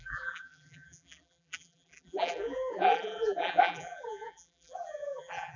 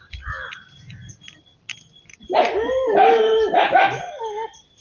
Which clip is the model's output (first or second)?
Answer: first